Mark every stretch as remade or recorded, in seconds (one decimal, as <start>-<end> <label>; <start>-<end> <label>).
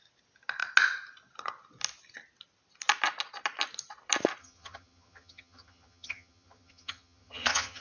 0.0-4.4 recorded; 4.4-7.8 remade